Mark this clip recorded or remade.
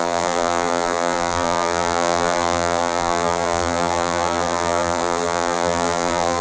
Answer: remade